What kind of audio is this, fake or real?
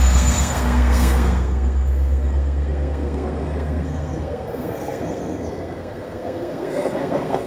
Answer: fake